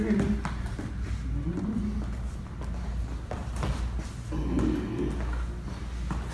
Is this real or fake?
real